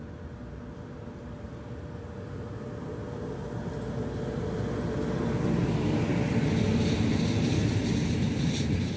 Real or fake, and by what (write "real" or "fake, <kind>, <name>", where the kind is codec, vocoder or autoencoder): real